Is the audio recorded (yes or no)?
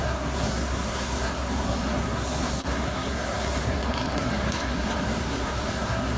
no